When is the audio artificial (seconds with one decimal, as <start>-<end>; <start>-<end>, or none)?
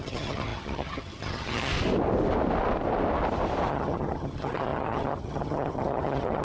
0.0-1.7; 3.7-6.4